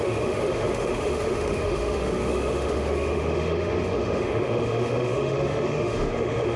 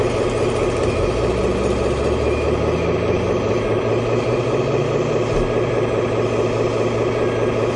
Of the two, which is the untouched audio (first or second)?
second